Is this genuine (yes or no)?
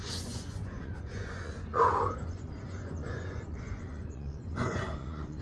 no